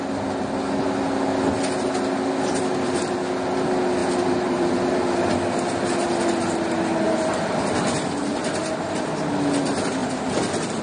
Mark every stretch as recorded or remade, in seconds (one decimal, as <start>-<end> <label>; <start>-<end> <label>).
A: 0.0-4.0 recorded; 4.0-5.3 remade; 5.3-10.0 recorded; 10.0-10.8 remade